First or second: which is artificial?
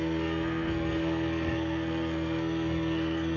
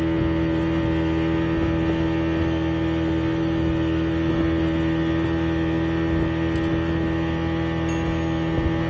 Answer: first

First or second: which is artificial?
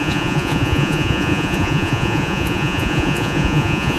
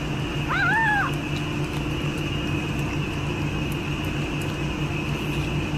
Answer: first